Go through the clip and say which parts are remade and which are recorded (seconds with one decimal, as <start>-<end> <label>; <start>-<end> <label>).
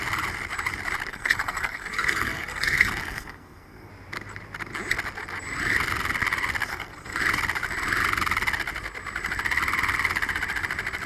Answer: 0.0-1.1 recorded; 1.1-3.9 remade; 3.9-6.7 recorded; 6.7-7.2 remade; 7.2-11.1 recorded